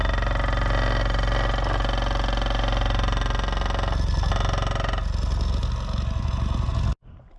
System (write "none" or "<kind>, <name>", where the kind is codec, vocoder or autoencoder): none